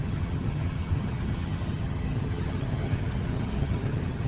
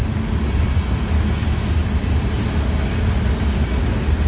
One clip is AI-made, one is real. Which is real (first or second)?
second